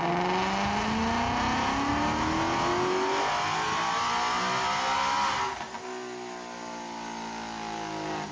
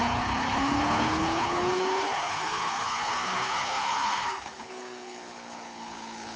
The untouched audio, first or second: first